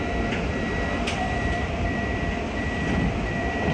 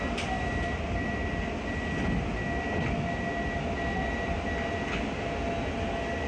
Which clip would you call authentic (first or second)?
second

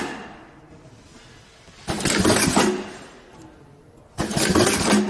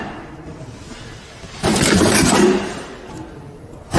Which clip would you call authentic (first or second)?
first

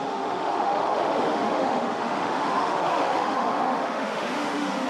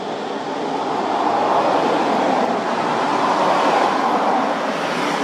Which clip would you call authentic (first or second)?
second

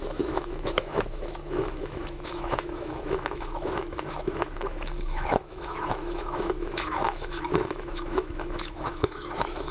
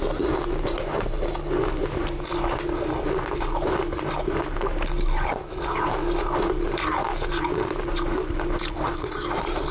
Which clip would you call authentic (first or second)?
second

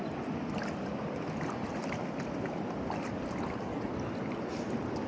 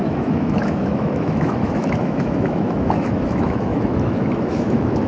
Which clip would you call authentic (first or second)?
first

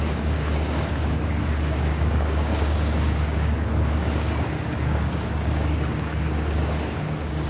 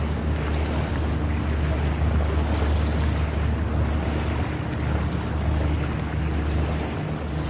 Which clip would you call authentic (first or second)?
second